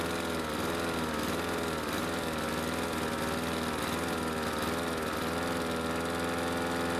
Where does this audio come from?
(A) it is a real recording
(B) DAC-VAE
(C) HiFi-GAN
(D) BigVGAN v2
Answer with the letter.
A